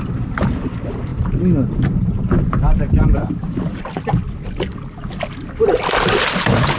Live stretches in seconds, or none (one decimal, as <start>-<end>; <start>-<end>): 0.0-6.8